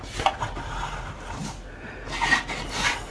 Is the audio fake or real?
real